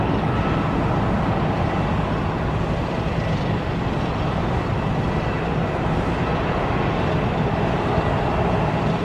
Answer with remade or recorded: recorded